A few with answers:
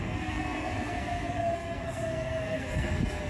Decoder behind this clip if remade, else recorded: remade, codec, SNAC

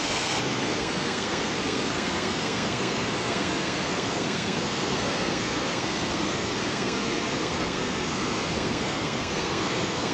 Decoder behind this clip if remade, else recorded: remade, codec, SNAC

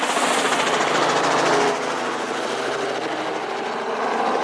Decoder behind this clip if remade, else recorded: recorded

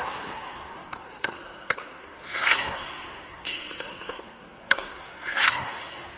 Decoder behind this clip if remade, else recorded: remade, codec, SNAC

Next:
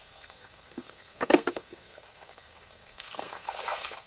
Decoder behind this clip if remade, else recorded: remade, codec, SNAC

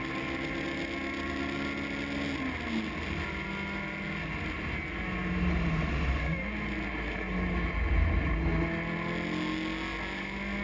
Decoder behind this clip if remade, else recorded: recorded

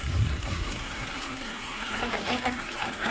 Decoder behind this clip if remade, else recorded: remade, codec, SNAC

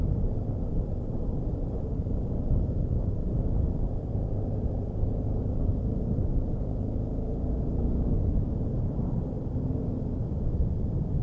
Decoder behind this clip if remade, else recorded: recorded